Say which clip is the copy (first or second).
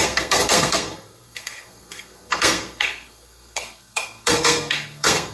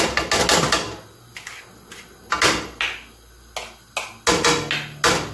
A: first